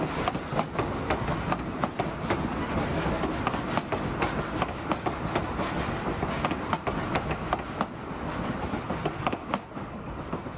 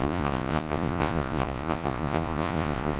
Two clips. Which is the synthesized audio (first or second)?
second